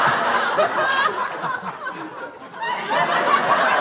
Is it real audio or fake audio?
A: real